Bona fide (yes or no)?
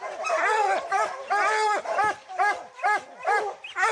yes